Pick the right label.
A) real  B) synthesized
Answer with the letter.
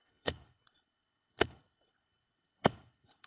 B